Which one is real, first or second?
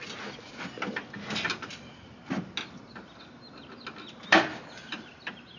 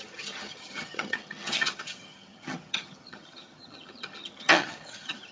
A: first